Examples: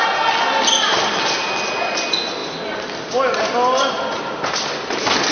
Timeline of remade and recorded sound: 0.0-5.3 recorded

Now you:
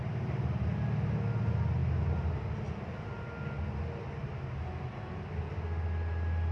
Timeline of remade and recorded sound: 0.0-6.5 recorded

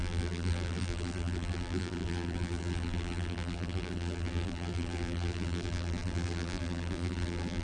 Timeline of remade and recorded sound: 0.0-7.6 remade

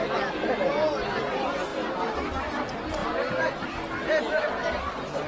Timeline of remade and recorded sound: 0.0-5.3 recorded

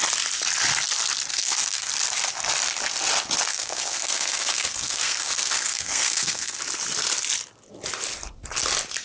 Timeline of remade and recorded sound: 0.0-1.3 recorded; 1.3-1.9 remade; 1.9-3.5 recorded; 3.5-6.6 remade; 6.6-9.0 recorded

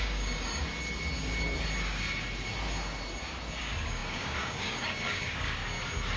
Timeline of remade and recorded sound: 0.0-0.6 remade; 0.6-3.6 recorded; 3.6-5.6 remade; 5.6-6.2 recorded